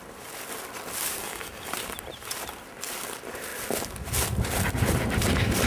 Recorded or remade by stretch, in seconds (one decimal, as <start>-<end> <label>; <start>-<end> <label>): 0.0-1.2 recorded; 1.2-1.7 remade; 1.7-5.7 recorded